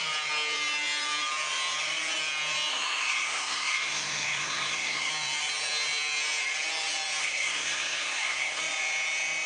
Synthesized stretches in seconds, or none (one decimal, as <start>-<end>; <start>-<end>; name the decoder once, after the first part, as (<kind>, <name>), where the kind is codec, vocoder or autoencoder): 2.7-5.1 (codec, SNAC); 7.2-8.6